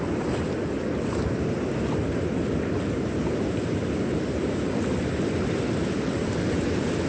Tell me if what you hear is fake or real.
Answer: real